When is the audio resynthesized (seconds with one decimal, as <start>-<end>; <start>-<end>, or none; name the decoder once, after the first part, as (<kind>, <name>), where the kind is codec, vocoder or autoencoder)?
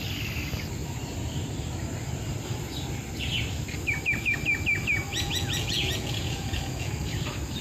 5.1-6.9 (vocoder, Vocos)